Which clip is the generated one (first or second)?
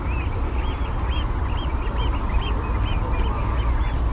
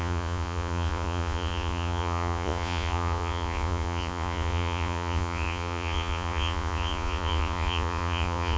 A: second